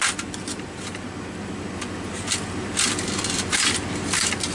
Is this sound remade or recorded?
recorded